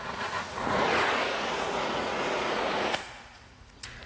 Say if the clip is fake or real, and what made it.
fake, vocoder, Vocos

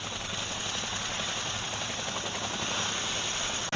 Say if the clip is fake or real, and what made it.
real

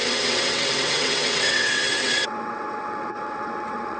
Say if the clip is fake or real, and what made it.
fake, vocoder, WaveNeXt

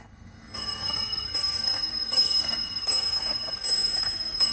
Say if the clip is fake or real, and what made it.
fake, codec, SNAC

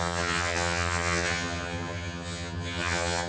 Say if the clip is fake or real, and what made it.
fake, vocoder, HiFi-GAN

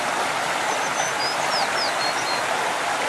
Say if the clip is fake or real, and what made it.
real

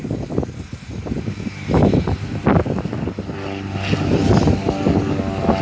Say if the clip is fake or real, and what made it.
real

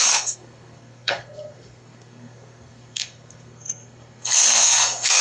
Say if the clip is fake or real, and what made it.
fake, codec, SNAC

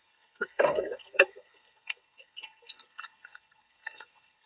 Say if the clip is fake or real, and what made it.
fake, codec, SNAC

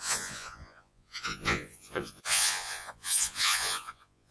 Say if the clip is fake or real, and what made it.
fake, vocoder, Vocos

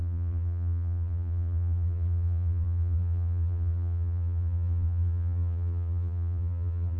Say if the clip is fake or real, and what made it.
fake, vocoder, BigVGAN v2